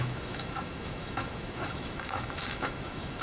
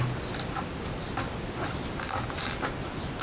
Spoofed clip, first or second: first